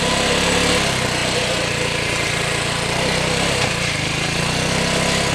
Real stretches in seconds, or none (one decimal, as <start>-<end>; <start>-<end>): 0.0-1.2; 4.4-5.3